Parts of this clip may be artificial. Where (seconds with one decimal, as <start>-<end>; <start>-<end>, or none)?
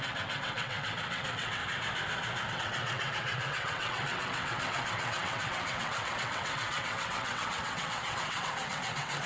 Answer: 0.0-1.6; 2.5-9.3